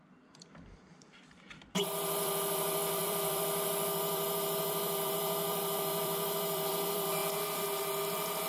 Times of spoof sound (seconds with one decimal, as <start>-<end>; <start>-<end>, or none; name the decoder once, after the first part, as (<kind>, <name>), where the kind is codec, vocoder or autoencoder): 0.0-7.2 (vocoder, BigVGAN v2); 7.8-8.5